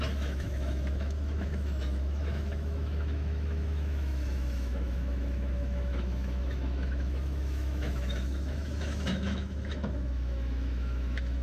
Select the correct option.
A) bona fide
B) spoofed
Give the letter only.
B